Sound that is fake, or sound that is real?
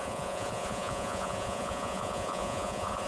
fake